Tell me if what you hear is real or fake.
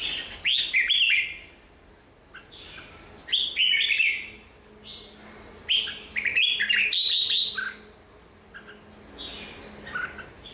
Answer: real